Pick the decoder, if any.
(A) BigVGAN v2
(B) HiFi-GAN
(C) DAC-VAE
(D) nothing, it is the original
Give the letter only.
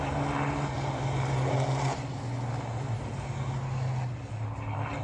D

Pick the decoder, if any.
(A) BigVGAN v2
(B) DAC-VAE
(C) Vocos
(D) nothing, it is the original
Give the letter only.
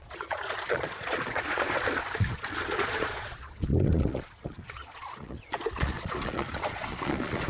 C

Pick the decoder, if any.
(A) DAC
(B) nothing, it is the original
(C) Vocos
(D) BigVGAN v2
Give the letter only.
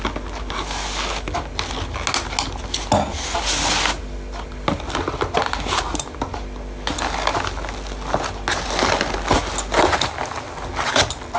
B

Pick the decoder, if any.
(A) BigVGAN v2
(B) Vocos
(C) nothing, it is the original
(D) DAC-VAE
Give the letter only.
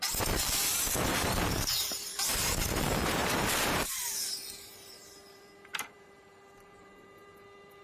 A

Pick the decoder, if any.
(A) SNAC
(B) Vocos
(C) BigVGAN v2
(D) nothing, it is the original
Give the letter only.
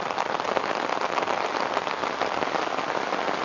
D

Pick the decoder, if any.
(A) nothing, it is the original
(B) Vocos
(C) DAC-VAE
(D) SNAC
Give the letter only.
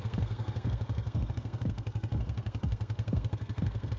D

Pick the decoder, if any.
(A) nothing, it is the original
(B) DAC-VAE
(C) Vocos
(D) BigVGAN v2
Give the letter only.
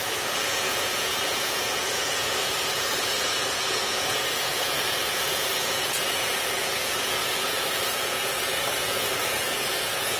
C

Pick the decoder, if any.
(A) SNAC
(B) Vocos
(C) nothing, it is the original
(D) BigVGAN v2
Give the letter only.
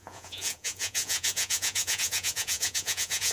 B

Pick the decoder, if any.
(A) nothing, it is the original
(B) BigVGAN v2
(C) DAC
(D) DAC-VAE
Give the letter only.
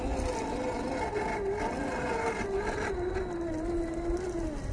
A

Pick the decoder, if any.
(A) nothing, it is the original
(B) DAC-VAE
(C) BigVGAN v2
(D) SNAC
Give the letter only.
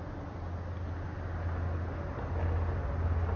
A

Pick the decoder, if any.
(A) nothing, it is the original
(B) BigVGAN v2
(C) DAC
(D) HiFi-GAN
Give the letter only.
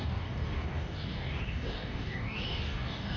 C